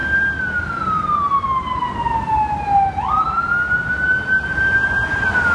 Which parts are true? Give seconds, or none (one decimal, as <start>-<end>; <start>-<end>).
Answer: 0.0-5.5